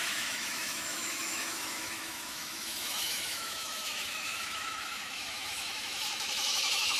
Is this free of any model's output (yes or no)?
no